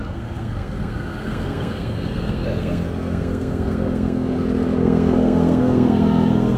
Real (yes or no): no